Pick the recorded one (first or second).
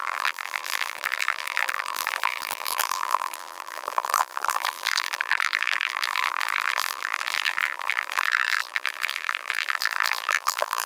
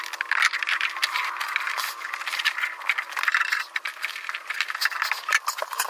second